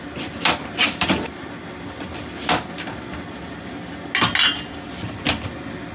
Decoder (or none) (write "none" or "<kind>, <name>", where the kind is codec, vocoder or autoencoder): none